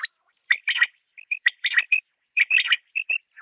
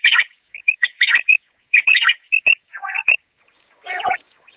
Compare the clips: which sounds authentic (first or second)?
first